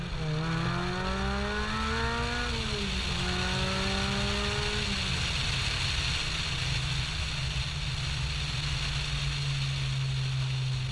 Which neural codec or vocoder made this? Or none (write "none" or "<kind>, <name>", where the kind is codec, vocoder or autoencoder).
none